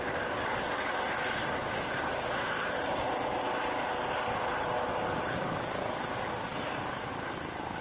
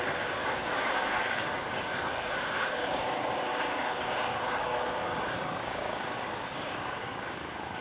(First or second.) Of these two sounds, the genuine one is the first